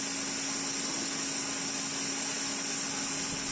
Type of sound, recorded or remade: recorded